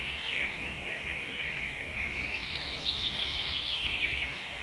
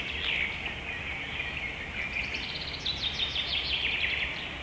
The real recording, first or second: second